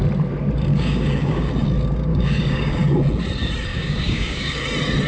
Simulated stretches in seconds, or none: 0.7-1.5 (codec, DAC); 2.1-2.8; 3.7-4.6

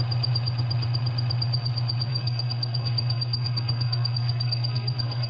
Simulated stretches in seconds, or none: 2.1-5.3 (codec, SNAC)